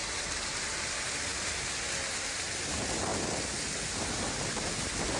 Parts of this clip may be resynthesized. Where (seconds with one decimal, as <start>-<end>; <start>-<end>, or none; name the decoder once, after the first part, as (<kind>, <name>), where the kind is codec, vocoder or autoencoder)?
none